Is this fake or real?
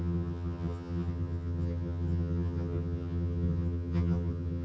fake